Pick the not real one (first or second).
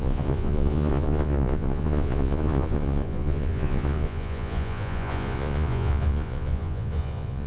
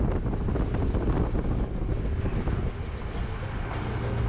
first